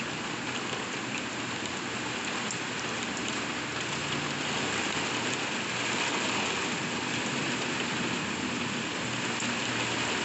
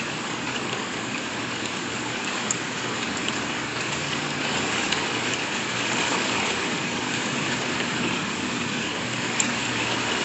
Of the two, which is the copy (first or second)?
second